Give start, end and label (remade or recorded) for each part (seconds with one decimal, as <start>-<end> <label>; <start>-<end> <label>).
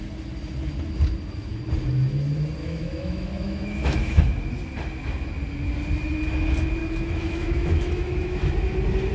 0.0-2.6 recorded; 2.6-4.2 remade; 4.2-6.8 recorded; 6.8-8.5 remade; 8.5-9.1 recorded